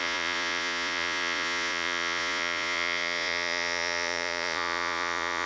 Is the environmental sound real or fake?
fake